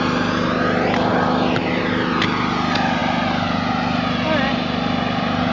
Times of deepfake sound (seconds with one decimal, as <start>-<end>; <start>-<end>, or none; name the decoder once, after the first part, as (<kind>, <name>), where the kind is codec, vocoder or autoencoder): none

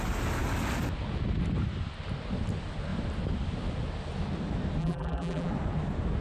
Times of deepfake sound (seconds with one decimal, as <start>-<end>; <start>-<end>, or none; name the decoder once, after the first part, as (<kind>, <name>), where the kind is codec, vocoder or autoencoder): 4.8-5.5 (vocoder, BigVGAN v2)